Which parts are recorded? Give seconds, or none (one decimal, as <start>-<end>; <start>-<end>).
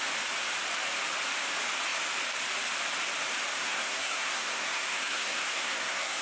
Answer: 0.0-3.5